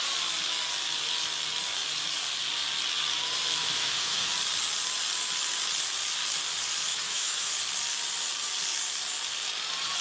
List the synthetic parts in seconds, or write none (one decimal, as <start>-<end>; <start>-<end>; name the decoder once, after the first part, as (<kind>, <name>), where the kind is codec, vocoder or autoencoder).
3.6-4.3 (autoencoder, DAC-VAE); 6.9-7.5